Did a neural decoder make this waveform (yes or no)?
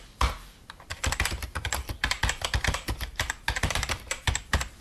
yes